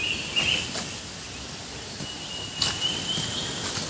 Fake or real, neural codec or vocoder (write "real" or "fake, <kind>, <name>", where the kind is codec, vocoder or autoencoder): real